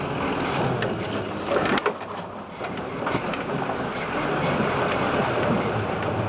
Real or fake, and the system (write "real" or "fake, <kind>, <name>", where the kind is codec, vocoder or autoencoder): real